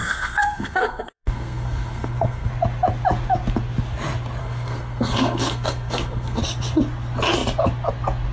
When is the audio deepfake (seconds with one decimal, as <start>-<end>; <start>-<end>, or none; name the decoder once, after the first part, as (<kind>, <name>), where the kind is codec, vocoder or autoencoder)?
0.0-2.5 (codec, SNAC); 4.4-6.4